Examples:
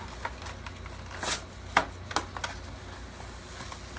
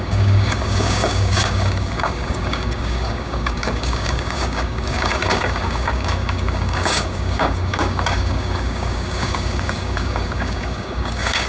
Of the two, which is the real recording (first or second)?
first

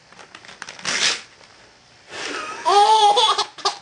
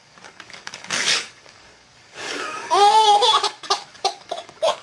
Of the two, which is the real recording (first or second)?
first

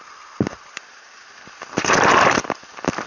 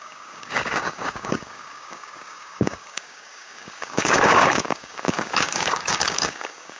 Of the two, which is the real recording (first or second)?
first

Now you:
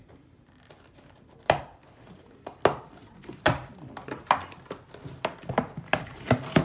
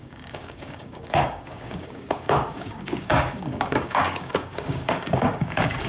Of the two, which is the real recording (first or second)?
first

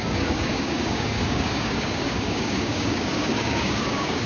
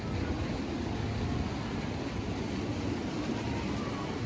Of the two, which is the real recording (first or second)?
second